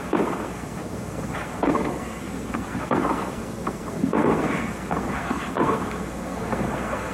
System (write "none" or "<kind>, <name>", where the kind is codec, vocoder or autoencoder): codec, SNAC